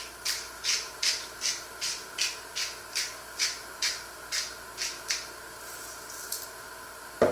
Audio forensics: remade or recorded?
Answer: recorded